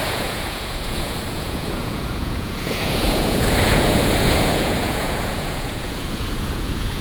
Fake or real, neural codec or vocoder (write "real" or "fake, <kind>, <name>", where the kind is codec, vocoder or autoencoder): fake, vocoder, Vocos